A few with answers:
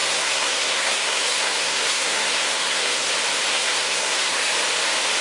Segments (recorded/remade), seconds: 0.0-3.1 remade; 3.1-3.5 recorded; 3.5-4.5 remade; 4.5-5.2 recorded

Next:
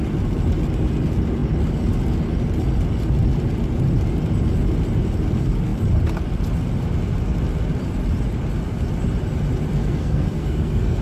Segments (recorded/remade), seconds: 0.0-9.8 recorded; 9.8-11.0 remade

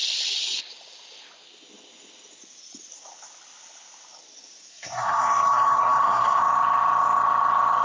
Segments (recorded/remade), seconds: 0.0-4.7 recorded; 4.7-6.4 remade; 6.4-7.8 recorded

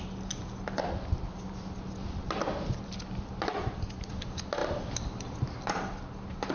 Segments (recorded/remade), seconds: 0.0-6.5 recorded